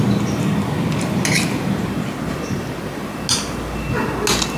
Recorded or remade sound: recorded